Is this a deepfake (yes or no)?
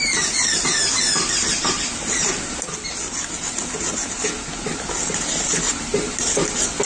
no